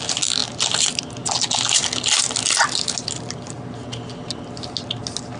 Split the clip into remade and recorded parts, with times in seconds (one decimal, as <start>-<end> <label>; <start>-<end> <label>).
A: 0.0-0.4 recorded; 0.4-1.0 remade; 1.0-5.4 recorded